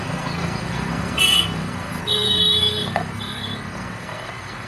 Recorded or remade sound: remade